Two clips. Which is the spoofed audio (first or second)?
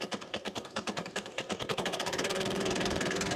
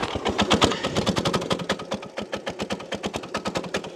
first